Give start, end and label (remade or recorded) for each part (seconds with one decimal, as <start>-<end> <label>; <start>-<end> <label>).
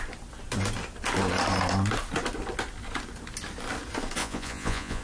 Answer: 0.0-4.2 recorded; 4.2-5.0 remade